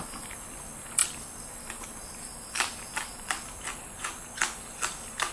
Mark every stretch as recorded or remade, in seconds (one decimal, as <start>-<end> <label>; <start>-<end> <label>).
0.0-5.3 recorded